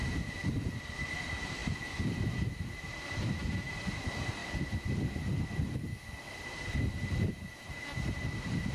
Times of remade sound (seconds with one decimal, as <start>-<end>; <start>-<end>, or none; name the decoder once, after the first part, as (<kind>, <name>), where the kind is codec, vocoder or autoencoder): 0.0-5.9 (vocoder, BigVGAN v2); 6.4-8.7